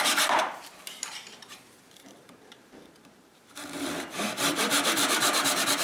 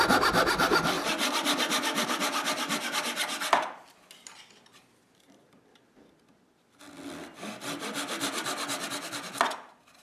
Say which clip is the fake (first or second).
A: first